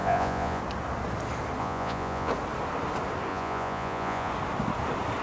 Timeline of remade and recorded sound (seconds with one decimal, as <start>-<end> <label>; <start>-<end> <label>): 0.0-0.6 remade; 0.6-1.6 recorded; 1.6-2.3 remade; 2.3-3.3 recorded; 3.3-4.3 remade; 4.3-5.2 recorded